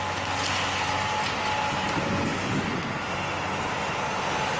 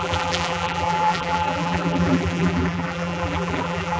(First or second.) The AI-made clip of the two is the second